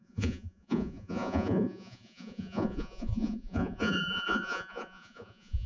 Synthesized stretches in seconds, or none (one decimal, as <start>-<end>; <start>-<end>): 0.0-5.7